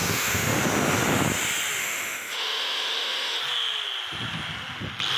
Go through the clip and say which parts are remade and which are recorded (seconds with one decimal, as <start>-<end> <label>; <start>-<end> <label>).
0.0-0.6 remade; 0.6-1.8 recorded; 1.8-3.4 remade; 3.4-5.2 recorded